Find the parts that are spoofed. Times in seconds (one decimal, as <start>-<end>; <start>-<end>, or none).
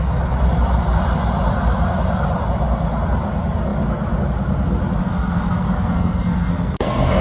5.0-7.2